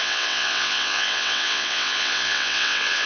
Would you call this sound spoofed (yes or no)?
yes